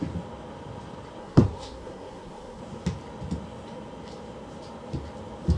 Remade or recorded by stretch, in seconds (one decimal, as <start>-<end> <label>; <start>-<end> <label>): 0.0-1.2 recorded; 1.2-2.6 remade; 2.6-5.6 recorded